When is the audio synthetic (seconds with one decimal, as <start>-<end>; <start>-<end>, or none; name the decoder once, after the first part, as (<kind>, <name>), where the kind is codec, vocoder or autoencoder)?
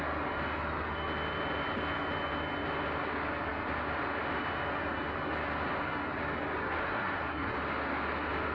6.8-7.6 (codec, SNAC)